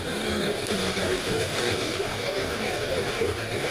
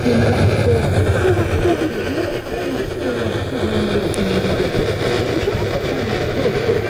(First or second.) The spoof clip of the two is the first